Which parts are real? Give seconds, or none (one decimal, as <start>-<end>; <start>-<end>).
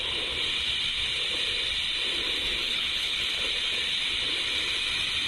0.0-2.6; 3.2-5.3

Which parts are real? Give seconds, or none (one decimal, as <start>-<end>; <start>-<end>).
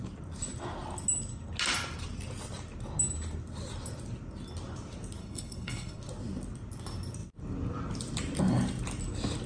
0.0-5.2; 6.0-9.5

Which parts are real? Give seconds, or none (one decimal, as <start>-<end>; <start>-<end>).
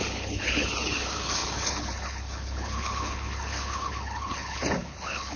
none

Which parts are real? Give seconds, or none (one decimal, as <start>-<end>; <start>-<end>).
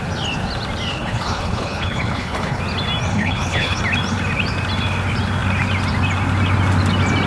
0.0-0.9; 2.6-3.1; 3.8-7.3